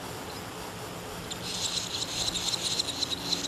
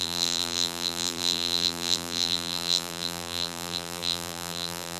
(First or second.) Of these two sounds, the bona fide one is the first